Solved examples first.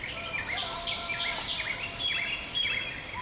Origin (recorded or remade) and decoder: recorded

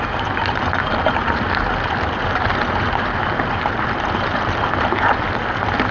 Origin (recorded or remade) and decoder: recorded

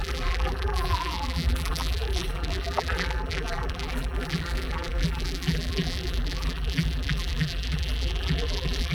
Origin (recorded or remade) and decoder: remade, vocoder, BigVGAN v2